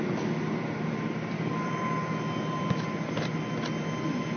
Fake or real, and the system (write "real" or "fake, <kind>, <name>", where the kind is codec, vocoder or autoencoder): real